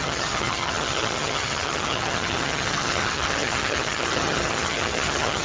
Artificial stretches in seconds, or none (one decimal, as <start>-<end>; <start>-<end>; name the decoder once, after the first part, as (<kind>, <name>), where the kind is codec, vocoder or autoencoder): 0.0-5.4 (vocoder, HiFi-GAN)